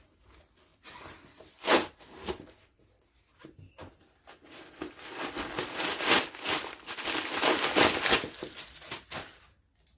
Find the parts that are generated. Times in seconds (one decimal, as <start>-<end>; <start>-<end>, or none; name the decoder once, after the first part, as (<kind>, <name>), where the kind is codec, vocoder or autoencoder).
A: none